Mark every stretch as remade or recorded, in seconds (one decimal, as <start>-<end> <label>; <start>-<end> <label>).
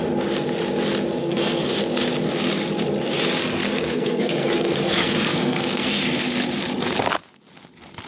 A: 0.0-1.2 recorded; 1.2-1.7 remade; 1.7-3.6 recorded; 3.6-6.0 remade; 6.0-8.1 recorded